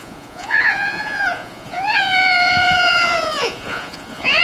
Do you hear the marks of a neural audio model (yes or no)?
yes